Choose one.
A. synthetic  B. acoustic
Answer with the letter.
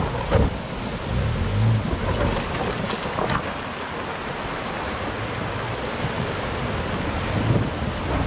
B